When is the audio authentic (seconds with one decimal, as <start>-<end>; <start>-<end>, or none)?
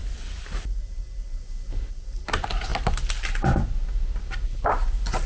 0.6-5.3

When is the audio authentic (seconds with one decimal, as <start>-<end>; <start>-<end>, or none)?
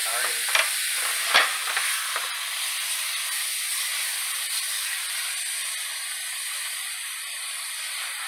0.0-3.7; 7.7-8.3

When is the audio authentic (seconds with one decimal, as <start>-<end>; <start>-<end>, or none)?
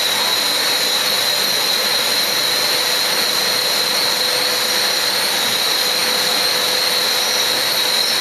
0.0-8.2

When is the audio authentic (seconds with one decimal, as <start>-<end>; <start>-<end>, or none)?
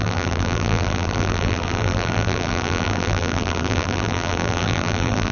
none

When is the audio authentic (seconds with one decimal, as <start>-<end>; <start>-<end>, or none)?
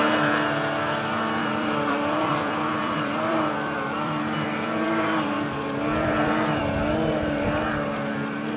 0.0-1.4; 6.6-8.6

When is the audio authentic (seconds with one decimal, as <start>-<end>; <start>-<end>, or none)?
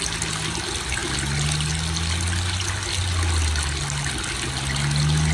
0.0-5.3